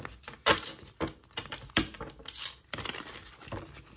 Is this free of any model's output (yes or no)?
yes